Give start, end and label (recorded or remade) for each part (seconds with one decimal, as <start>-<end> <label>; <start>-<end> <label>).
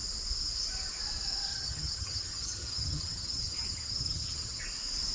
0.0-1.5 recorded; 1.5-4.6 remade; 4.6-5.1 recorded